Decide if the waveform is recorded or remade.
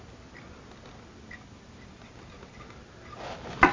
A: recorded